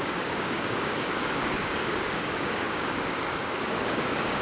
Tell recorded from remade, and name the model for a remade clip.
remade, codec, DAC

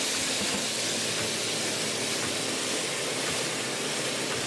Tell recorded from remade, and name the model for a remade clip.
recorded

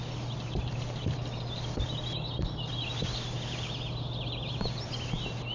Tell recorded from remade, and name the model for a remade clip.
recorded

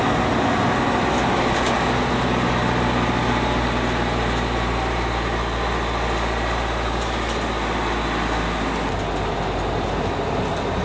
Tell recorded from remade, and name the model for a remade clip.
recorded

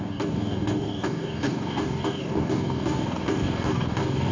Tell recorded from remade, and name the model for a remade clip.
remade, codec, DAC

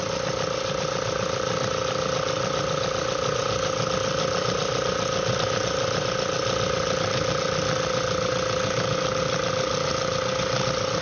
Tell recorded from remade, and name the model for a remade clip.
recorded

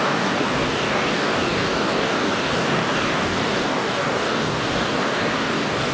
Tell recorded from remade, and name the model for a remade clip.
remade, codec, DAC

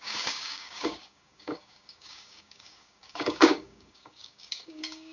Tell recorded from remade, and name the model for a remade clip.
remade, codec, DAC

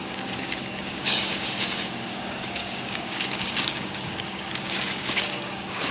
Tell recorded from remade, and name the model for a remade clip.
remade, codec, DAC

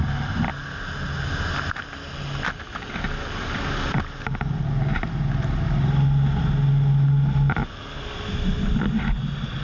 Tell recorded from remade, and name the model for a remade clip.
recorded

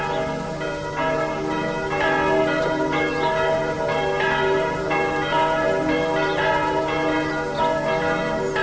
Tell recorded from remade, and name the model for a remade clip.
recorded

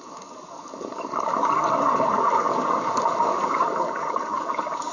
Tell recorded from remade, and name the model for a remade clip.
remade, codec, DAC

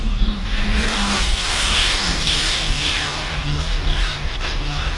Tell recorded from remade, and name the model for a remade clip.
remade, codec, DAC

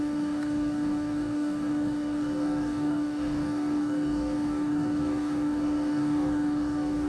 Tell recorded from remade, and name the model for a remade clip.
remade, codec, DAC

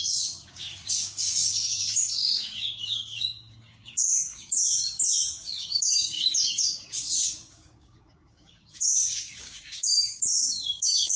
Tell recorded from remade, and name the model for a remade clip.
remade, codec, DAC